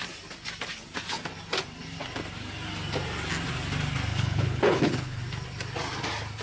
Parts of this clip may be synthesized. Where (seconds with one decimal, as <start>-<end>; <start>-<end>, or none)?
4.1-5.2